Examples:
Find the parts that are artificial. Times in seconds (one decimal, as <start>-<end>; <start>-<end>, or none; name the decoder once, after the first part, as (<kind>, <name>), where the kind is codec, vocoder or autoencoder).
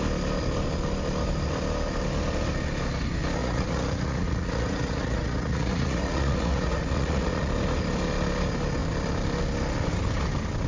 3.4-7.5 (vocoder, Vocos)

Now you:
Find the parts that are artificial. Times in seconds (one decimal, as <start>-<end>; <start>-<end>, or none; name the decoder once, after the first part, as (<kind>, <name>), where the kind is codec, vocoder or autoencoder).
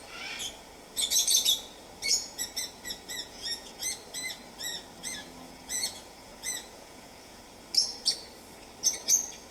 2.1-3.8 (vocoder, Vocos); 5.2-7.4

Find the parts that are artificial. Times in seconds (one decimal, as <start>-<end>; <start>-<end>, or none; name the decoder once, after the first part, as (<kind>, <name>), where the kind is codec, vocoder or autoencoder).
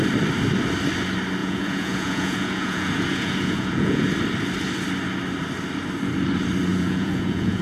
1.4-4.1 (vocoder, Vocos); 6.7-7.6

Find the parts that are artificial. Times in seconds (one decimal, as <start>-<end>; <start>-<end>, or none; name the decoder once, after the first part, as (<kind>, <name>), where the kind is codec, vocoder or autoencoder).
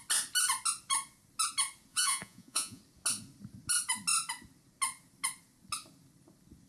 1.9-2.8 (vocoder, Vocos)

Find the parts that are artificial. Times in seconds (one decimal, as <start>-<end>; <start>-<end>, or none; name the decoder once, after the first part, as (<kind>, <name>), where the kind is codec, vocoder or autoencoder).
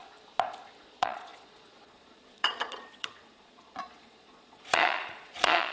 0.8-5.7 (vocoder, Vocos)